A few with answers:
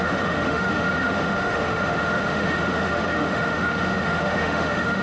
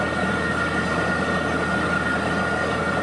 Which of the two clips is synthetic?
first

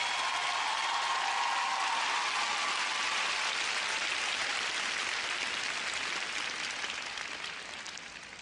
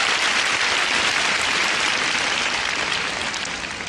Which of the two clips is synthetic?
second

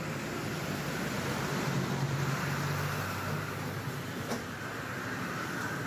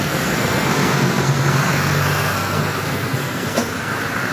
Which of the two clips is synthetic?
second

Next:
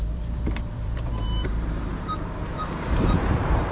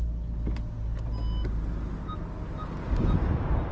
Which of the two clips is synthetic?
first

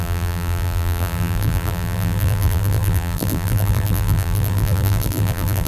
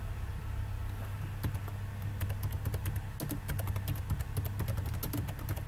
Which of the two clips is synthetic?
first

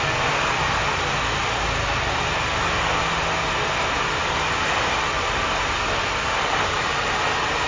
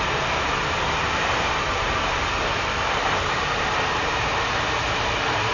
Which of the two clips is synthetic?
second